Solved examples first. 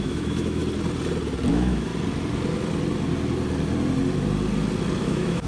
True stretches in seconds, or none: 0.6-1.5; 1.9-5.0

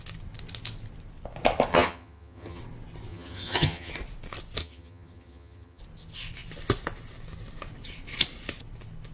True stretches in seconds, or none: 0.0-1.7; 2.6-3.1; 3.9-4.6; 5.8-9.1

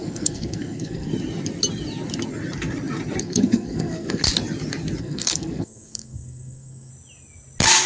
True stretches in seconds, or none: 1.1-3.2; 4.2-5.0; 6.9-7.9

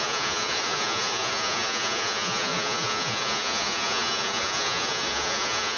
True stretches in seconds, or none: none